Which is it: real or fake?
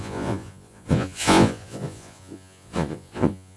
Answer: fake